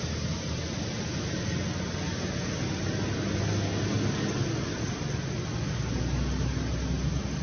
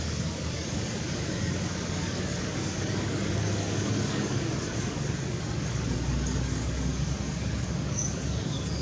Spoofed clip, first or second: second